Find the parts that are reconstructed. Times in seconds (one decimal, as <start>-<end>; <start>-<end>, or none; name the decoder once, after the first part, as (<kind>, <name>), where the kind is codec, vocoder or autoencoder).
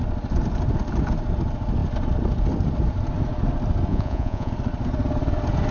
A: 3.9-4.5 (vocoder, Vocos)